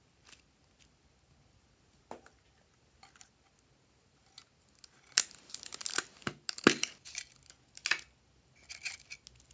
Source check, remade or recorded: recorded